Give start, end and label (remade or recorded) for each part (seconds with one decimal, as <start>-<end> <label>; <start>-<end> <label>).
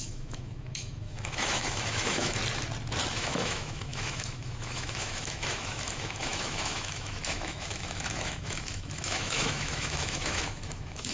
0.0-2.4 remade; 2.4-3.1 recorded; 3.1-11.1 remade